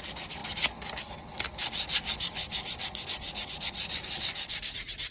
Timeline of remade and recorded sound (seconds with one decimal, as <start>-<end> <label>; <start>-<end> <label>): 0.0-5.1 recorded